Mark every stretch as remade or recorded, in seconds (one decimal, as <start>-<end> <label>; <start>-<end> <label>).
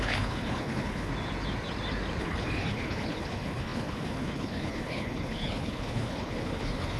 0.0-1.1 remade; 1.1-2.2 recorded; 2.2-7.0 remade